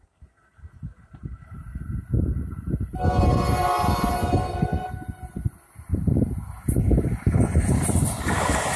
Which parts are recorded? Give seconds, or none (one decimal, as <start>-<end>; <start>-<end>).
0.0-8.8